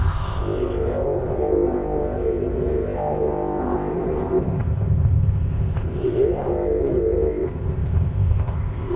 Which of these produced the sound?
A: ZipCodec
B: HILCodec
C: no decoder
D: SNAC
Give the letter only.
A